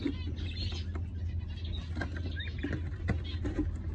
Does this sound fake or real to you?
real